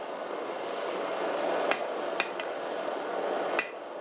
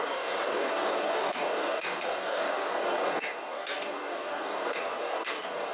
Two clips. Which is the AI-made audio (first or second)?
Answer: second